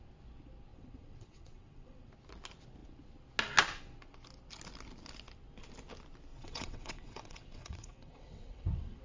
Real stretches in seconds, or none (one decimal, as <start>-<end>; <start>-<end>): 0.0-0.7; 2.1-6.3